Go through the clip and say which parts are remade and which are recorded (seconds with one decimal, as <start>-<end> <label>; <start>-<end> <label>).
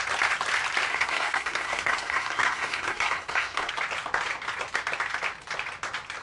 0.0-0.9 recorded; 0.9-3.7 remade; 3.7-6.2 recorded